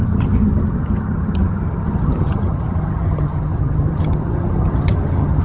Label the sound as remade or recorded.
remade